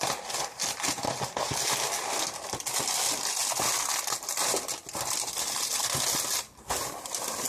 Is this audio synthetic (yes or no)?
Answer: no